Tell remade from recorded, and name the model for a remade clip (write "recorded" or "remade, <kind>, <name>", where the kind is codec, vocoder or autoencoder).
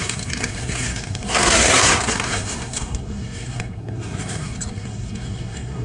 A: remade, codec, SNAC